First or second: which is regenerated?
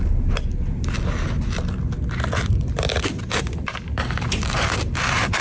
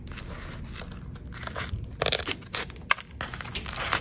first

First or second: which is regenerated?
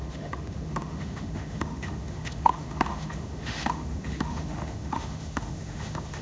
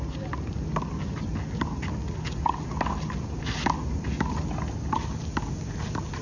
first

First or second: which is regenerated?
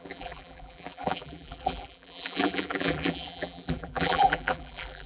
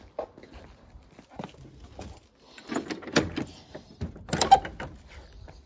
first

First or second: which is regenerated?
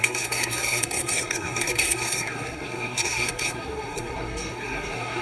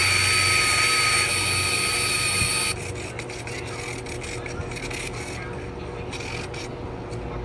first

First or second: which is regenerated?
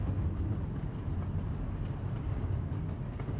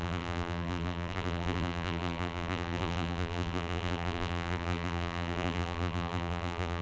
second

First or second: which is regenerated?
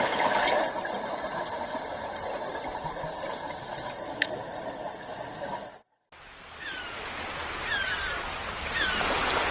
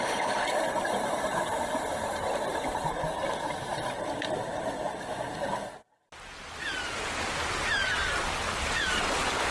second